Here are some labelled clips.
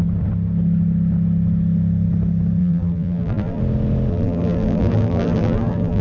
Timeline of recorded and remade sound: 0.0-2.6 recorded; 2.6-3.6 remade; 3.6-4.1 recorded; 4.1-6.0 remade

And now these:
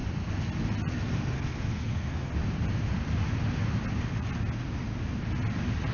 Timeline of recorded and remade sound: 0.0-0.9 recorded; 0.9-2.3 remade; 2.3-5.9 recorded

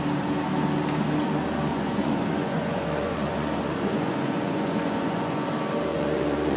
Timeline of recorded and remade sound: 0.0-1.7 recorded; 1.7-5.5 remade; 5.5-5.9 recorded; 5.9-6.6 remade

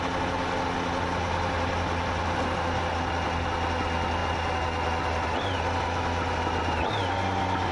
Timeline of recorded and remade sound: 0.0-7.7 recorded

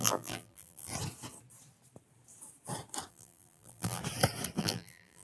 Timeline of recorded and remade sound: 0.0-0.9 remade; 0.9-3.1 recorded; 3.1-4.0 remade; 4.0-4.6 recorded; 4.6-5.2 remade

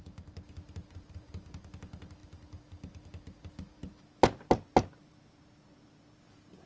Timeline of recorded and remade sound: 0.0-6.7 recorded

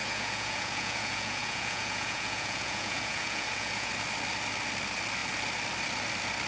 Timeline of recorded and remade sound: 0.0-3.9 remade; 3.9-6.5 recorded

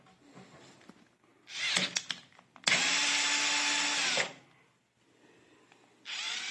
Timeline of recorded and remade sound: 0.0-6.5 recorded